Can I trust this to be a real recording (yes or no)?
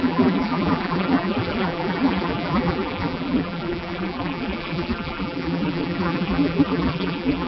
no